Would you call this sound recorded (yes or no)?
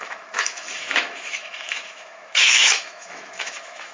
no